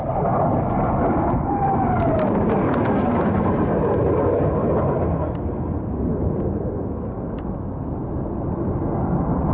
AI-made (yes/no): no